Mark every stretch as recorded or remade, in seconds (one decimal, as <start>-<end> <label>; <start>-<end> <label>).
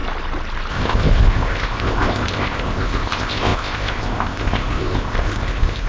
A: 0.0-0.7 recorded; 0.7-5.9 remade